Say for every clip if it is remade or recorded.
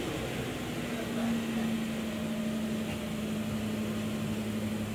recorded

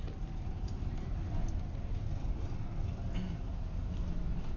recorded